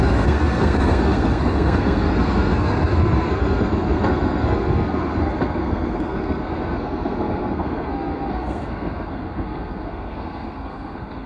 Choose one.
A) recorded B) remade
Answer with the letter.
B